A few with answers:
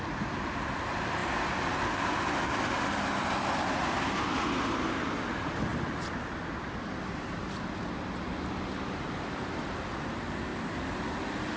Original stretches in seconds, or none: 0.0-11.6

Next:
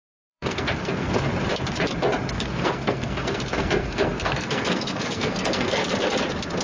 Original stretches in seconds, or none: 1.3-2.3; 5.8-6.6

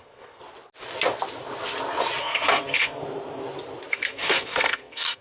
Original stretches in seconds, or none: 0.4-2.2; 3.0-3.9

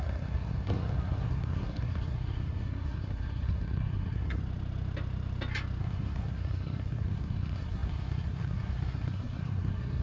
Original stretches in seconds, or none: 4.4-5.8

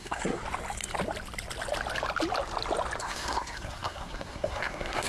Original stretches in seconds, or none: 0.4-3.0

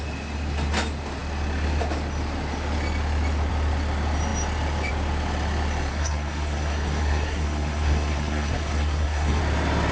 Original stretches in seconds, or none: 0.0-5.9; 9.4-9.9

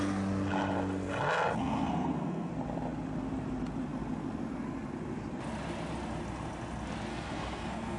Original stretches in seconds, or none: 0.0-1.6; 2.5-7.1

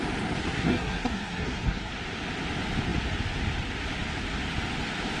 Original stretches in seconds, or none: 0.0-0.4; 1.9-5.2